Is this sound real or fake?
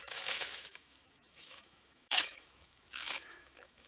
fake